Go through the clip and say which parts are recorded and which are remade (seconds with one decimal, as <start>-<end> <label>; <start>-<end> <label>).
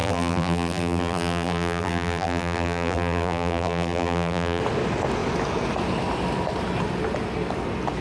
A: 0.0-4.6 remade; 4.6-8.0 recorded